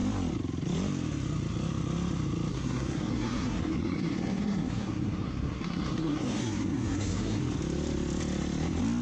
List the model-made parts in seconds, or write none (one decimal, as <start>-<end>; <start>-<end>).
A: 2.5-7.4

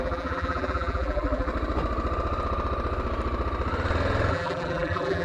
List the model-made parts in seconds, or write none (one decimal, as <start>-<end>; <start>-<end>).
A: 0.0-1.5; 4.3-5.2

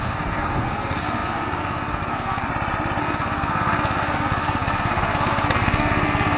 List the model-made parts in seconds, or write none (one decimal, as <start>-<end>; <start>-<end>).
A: 0.0-2.5; 3.0-6.4

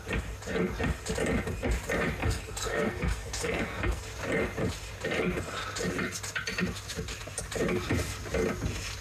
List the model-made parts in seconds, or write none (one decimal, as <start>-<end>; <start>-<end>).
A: 2.2-4.0

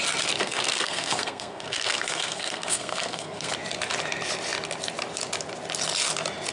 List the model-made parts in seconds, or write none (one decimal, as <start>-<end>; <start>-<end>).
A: 0.4-3.5